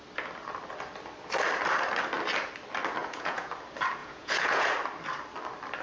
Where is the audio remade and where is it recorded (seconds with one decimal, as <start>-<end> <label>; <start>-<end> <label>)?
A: 0.0-3.0 recorded; 3.0-3.5 remade; 3.5-4.0 recorded; 4.0-4.7 remade; 4.7-5.8 recorded